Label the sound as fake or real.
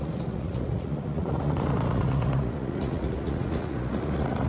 fake